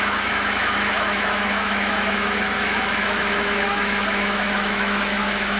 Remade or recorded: remade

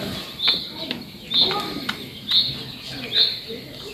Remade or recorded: recorded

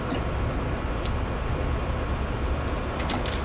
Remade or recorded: recorded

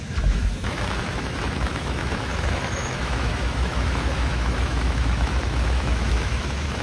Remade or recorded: remade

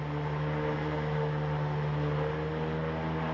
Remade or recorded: recorded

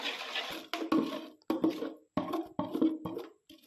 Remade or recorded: recorded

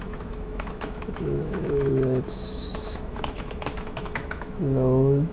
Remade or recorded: remade